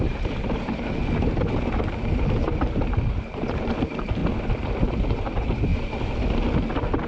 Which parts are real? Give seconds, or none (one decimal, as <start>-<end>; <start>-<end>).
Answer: 1.0-1.9; 4.2-4.8; 5.7-7.1